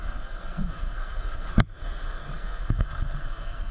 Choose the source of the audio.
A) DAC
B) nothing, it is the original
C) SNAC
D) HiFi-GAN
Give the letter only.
C